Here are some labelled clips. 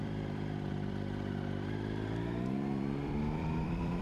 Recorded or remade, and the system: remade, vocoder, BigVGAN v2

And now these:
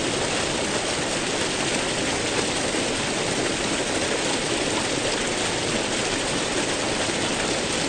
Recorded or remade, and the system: recorded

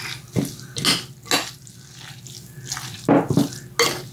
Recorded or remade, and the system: recorded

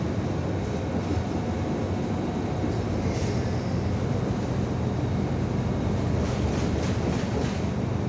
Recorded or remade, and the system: recorded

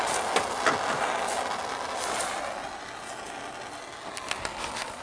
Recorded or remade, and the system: recorded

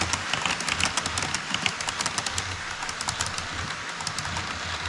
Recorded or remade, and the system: recorded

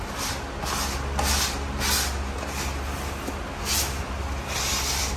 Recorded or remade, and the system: recorded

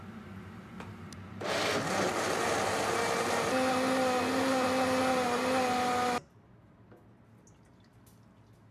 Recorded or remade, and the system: recorded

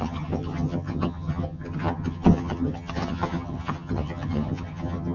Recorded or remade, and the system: remade, vocoder, HiFi-GAN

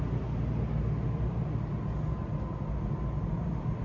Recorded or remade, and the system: recorded